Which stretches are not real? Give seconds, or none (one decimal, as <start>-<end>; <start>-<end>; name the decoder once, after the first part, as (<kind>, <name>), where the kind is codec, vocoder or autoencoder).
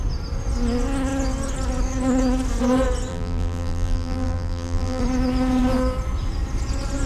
3.1-5.0 (vocoder, BigVGAN v2)